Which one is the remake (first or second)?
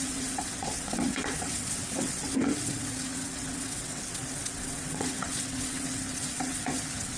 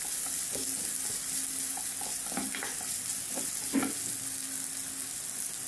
first